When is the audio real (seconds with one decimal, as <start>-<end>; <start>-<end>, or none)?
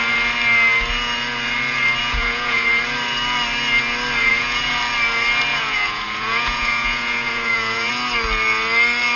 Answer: 0.0-2.0; 2.7-4.2; 4.8-5.5; 7.9-9.2